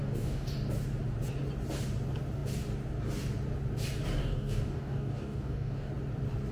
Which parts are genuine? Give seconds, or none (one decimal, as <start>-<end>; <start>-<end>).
0.5-4.2; 5.9-6.5